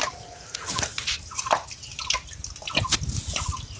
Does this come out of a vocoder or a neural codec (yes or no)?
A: no